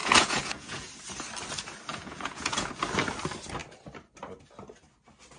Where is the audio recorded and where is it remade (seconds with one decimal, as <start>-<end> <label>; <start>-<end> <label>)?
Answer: 0.0-0.9 remade; 0.9-1.9 recorded; 1.9-2.7 remade; 2.7-5.4 recorded